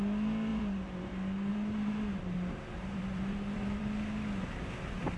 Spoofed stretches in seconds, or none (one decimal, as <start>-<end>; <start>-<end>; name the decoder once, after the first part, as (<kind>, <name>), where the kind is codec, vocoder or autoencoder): 0.5-1.1 (vocoder, BigVGAN v2); 1.5-3.8

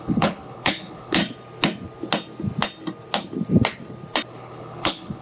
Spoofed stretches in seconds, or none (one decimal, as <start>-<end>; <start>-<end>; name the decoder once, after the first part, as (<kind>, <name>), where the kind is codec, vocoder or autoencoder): 0.0-1.2 (codec, HILCodec); 4.3-5.2

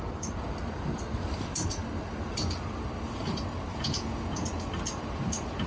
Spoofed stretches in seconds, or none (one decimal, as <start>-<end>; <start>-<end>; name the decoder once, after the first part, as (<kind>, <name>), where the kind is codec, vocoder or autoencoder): 3.7-4.5 (vocoder, Vocos)

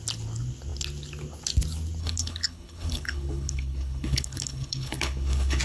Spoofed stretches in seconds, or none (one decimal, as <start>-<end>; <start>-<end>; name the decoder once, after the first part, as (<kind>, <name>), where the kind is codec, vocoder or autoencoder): 2.0-5.6 (codec, HILCodec)

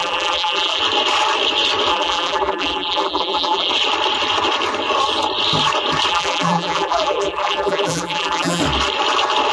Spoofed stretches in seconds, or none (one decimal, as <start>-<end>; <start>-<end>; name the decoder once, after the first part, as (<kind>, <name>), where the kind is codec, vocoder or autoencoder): 0.0-0.8 (vocoder, BigVGAN v2); 1.9-3.7; 6.1-8.6

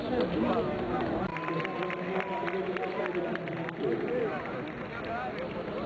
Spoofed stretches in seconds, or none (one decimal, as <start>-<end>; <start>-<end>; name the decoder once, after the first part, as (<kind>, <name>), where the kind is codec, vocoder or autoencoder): none